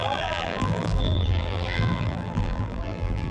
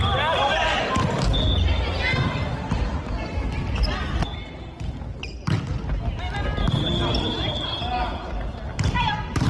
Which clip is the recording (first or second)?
second